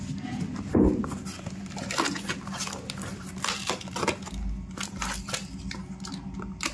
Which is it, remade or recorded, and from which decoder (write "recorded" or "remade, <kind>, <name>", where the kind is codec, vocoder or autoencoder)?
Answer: recorded